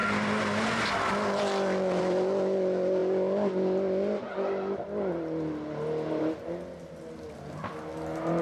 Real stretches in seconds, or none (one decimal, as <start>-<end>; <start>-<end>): 0.0-8.4